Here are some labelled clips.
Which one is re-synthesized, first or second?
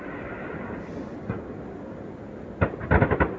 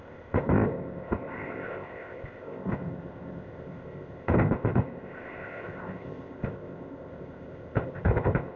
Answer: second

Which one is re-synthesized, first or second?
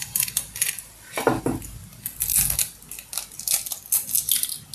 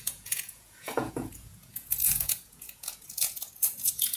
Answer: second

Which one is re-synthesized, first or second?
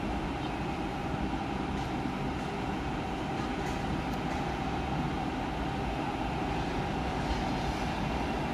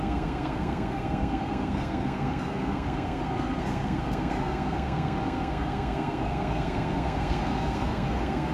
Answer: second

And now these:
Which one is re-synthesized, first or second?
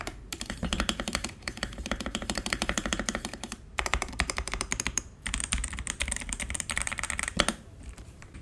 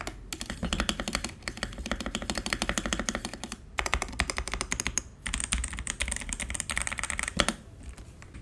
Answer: first